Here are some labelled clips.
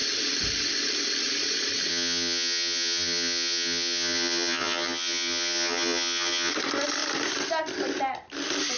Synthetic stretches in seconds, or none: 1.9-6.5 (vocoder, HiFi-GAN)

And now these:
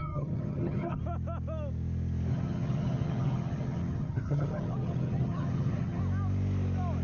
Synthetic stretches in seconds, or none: 0.0-1.0 (vocoder, HiFi-GAN); 2.3-6.0

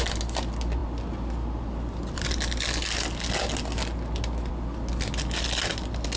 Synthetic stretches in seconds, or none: none

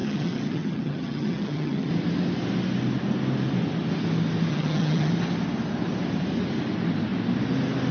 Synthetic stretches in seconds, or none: 0.0-1.9 (vocoder, HiFi-GAN); 4.5-5.1